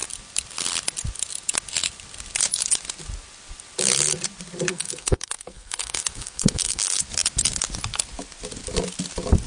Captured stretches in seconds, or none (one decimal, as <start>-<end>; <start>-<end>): 0.0-4.7; 7.0-9.5